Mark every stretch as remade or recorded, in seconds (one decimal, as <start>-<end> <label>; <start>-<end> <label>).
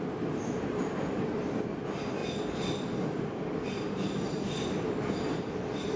0.0-6.0 recorded